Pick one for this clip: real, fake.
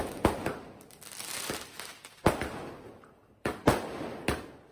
real